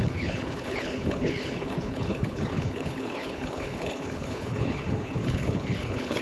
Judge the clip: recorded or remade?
remade